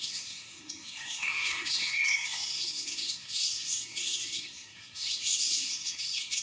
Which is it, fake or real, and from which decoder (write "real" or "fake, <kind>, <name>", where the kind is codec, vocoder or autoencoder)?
fake, codec, SNAC